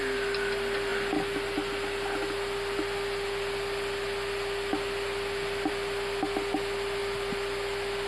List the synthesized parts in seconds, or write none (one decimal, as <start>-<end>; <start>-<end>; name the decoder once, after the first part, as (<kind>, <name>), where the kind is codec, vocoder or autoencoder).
none